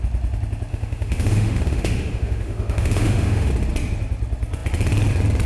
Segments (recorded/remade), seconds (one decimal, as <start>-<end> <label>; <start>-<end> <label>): 0.0-0.7 recorded; 0.7-3.5 remade; 3.5-5.5 recorded